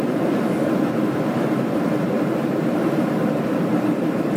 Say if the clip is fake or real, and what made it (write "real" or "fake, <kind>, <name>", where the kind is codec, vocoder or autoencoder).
fake, vocoder, BigVGAN v2